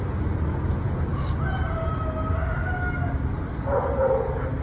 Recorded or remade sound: recorded